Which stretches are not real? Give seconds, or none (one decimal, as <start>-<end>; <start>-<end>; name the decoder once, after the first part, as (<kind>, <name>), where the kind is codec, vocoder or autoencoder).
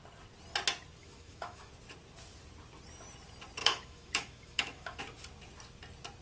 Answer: 1.0-1.7 (autoencoder, DAC-VAE); 3.6-5.0